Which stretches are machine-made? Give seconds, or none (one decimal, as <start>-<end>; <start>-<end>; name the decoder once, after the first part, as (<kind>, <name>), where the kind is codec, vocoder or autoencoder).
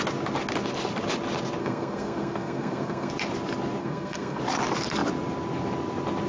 1.6-3.1 (codec, SNAC); 3.8-4.4